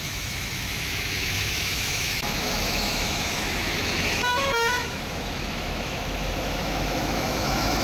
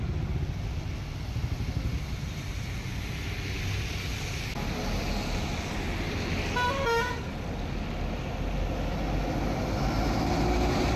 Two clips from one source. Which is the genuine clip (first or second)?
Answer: second